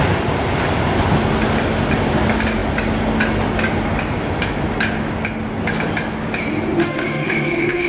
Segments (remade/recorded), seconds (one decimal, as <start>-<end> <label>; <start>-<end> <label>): 0.0-6.8 recorded; 6.8-7.9 remade